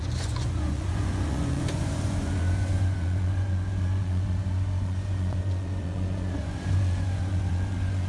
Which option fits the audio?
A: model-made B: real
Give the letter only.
A